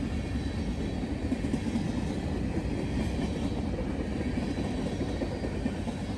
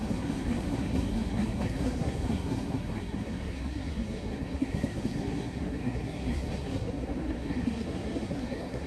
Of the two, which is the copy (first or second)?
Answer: second